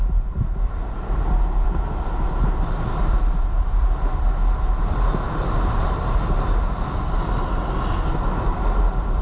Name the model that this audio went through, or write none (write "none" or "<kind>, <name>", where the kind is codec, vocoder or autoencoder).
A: none